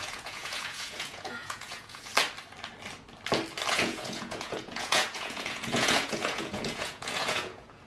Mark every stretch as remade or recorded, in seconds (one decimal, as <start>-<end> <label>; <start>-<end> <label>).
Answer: 0.0-2.1 remade; 2.1-3.7 recorded; 3.7-7.9 remade